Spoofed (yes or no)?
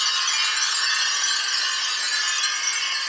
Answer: no